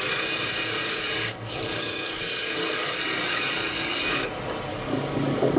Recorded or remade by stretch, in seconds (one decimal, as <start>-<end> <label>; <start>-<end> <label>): 0.0-0.8 recorded; 0.8-4.2 remade; 4.2-4.7 recorded; 4.7-5.6 remade